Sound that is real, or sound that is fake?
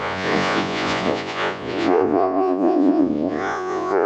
fake